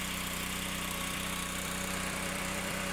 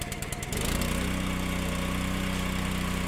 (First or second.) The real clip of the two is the second